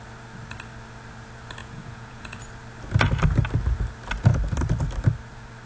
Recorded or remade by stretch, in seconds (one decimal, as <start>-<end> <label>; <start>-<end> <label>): 0.0-1.6 recorded; 1.6-2.4 remade; 2.4-5.7 recorded